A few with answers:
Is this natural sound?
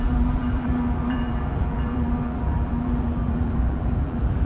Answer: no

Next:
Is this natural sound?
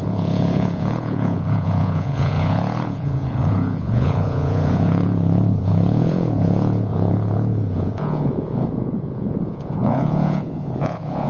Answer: no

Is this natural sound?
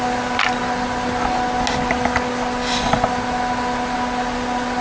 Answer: yes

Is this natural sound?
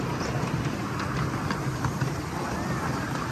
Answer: yes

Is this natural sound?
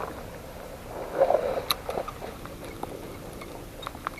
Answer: no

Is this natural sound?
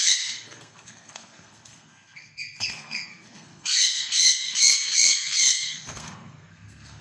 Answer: no